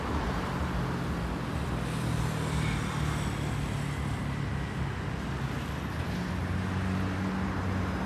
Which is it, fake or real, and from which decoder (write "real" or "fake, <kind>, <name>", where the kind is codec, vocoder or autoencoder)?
real